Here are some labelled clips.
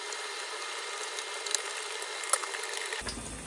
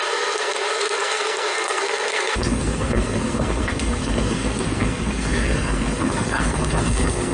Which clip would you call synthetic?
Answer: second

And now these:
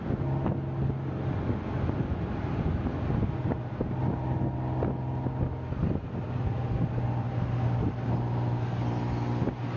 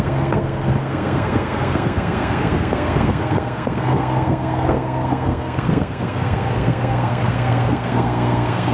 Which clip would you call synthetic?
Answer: second